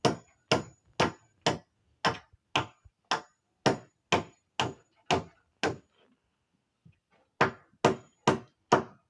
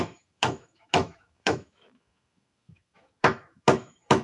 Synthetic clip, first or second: second